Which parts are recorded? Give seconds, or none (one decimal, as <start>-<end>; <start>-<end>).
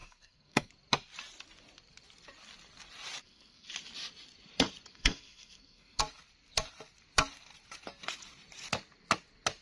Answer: 0.7-3.2; 3.7-4.9; 6.0-9.6